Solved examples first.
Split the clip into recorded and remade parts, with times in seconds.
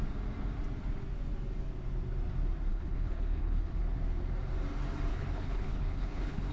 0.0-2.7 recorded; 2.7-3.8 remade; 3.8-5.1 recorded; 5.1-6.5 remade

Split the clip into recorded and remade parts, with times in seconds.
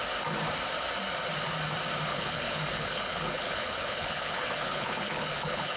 0.0-2.1 recorded; 2.1-5.8 remade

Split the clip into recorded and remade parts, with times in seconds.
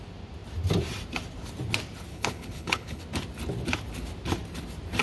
0.0-2.1 recorded; 2.1-3.0 remade; 3.0-5.0 recorded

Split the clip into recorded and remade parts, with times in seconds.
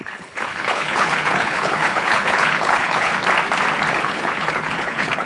0.0-3.1 remade; 3.1-3.9 recorded; 3.9-5.2 remade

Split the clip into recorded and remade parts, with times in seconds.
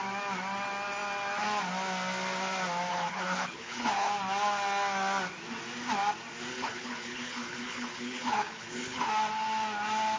0.0-2.9 recorded; 2.9-4.1 remade; 4.1-6.5 recorded; 6.5-9.1 remade; 9.1-10.2 recorded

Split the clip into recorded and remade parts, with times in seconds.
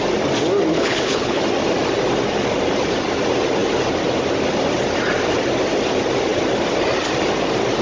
0.0-0.7 recorded; 0.7-1.4 remade; 1.4-7.8 recorded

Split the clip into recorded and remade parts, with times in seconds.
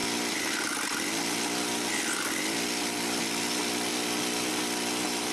0.0-5.3 recorded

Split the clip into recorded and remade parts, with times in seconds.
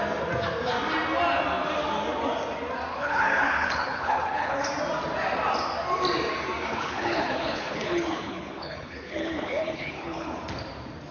0.0-2.9 recorded; 2.9-4.7 remade; 4.7-6.7 recorded; 6.7-10.4 remade; 10.4-11.1 recorded